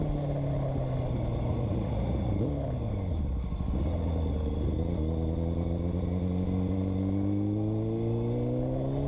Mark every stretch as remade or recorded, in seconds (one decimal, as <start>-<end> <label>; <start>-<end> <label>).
0.0-1.5 recorded; 1.5-2.3 remade; 2.3-9.1 recorded